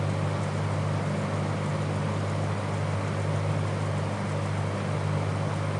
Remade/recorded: recorded